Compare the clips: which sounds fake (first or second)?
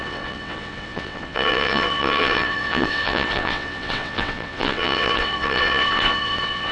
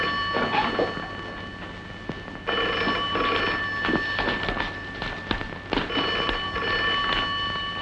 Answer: first